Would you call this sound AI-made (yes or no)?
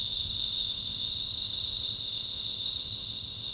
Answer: yes